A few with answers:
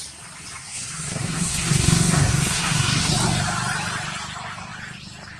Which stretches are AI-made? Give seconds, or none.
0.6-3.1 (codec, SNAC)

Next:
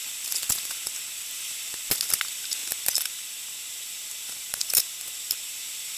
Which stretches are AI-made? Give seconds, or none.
0.0-6.0 (vocoder, BigVGAN v2)

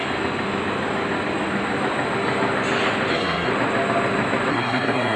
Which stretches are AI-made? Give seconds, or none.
3.1-3.5 (codec, SNAC); 4.5-5.2

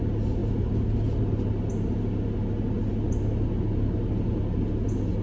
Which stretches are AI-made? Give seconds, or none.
none

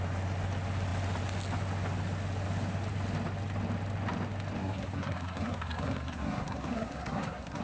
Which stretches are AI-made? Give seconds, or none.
4.6-7.6 (codec, SNAC)